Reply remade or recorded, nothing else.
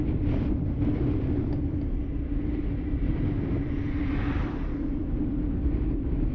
recorded